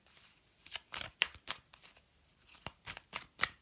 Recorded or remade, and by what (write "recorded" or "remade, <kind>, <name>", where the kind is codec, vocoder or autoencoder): recorded